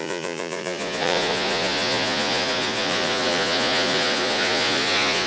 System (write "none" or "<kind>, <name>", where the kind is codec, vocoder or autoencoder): vocoder, Vocos